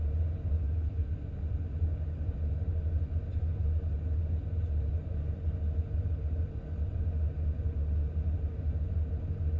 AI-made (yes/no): no